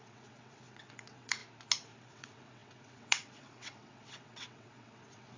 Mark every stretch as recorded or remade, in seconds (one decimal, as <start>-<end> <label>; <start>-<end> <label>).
0.0-1.4 remade; 1.4-2.0 recorded; 2.0-5.4 remade